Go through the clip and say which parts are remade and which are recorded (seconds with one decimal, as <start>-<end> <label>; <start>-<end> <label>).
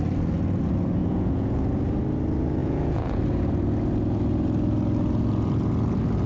0.0-1.0 recorded; 1.0-1.6 remade; 1.6-2.6 recorded; 2.6-3.2 remade; 3.2-6.3 recorded